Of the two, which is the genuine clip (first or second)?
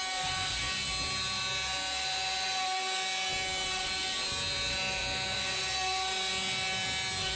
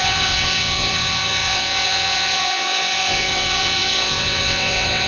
first